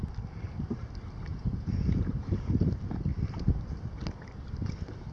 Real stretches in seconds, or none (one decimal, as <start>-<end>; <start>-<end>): 0.0-1.3; 2.5-5.1

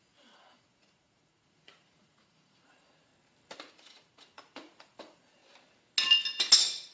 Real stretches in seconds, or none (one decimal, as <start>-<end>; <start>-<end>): 3.1-3.7; 5.4-6.9